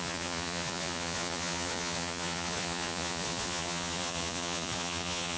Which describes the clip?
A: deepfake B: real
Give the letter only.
A